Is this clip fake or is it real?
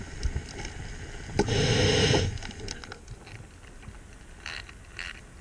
real